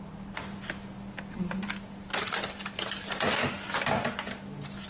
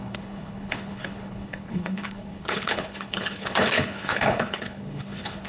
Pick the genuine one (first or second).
first